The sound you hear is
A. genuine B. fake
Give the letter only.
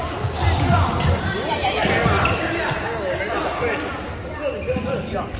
A